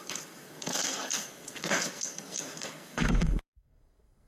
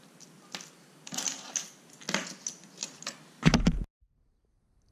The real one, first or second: second